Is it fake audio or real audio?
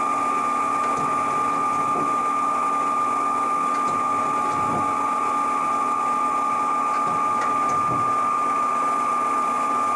real